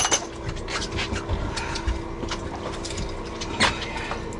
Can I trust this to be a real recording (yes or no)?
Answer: yes